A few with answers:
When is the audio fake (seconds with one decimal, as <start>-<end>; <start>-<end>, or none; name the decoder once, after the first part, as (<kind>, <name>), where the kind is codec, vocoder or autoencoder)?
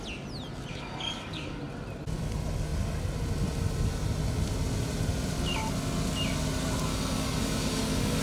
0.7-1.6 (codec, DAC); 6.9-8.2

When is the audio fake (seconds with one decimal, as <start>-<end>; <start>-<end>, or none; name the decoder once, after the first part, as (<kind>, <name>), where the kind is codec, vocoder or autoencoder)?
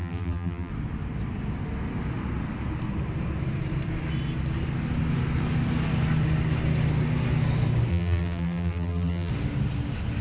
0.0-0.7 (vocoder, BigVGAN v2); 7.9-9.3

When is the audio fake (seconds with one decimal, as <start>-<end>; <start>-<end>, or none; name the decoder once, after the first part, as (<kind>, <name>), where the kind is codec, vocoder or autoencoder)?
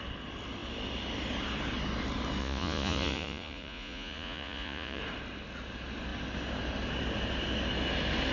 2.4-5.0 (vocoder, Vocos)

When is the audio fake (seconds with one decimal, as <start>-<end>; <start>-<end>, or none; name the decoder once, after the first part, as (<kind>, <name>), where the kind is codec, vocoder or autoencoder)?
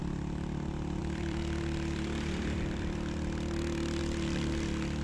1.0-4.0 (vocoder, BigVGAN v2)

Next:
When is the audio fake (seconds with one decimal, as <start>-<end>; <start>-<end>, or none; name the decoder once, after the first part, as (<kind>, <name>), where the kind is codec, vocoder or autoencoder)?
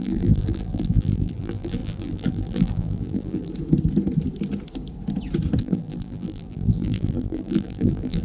0.0-3.5 (vocoder, BigVGAN v2); 5.6-8.2